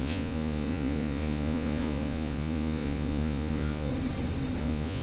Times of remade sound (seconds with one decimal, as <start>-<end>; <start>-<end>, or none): 0.0-3.9; 4.6-5.0